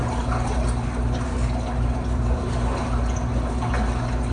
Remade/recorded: recorded